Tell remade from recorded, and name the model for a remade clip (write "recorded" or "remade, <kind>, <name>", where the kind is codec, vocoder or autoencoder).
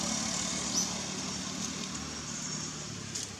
recorded